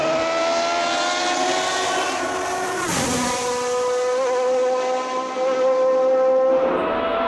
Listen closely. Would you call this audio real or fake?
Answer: real